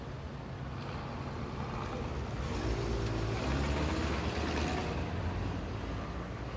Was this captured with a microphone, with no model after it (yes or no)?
yes